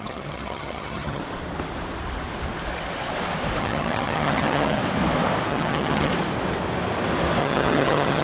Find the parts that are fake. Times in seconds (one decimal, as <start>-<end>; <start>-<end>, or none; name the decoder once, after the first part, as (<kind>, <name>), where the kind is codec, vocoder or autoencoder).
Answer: 0.0-1.2 (vocoder, HiFi-GAN); 3.6-4.8; 5.5-6.1; 7.4-8.2